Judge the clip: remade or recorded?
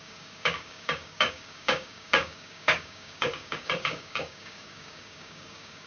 remade